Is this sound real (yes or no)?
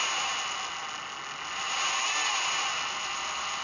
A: yes